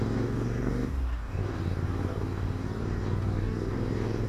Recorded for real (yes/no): no